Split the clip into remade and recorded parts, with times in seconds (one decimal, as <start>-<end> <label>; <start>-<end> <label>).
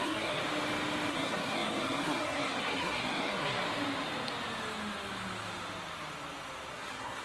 0.0-0.4 remade; 0.4-1.1 recorded; 1.1-3.6 remade; 3.6-6.7 recorded; 6.7-7.2 remade